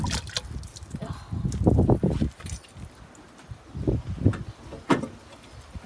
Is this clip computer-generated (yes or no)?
no